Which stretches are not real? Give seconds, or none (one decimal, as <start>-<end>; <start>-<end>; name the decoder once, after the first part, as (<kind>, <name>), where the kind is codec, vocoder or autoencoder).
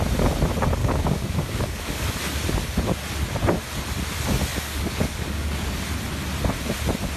0.8-2.1 (codec, DAC); 4.5-5.8